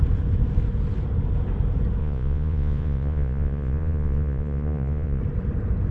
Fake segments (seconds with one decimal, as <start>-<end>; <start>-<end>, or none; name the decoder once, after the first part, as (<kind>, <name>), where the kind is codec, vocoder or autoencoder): 2.0-5.2 (vocoder, Vocos)